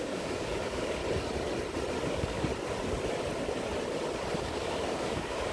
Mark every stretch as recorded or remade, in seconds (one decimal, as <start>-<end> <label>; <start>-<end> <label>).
0.0-1.0 remade; 1.0-2.1 recorded; 2.1-2.5 remade; 2.5-4.4 recorded; 4.4-5.5 remade